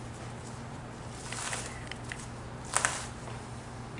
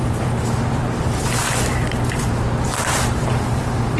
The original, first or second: first